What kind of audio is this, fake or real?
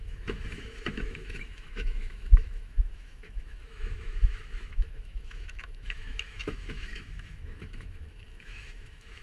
fake